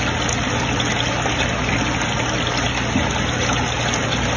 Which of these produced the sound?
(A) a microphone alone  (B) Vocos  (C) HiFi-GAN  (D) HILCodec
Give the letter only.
A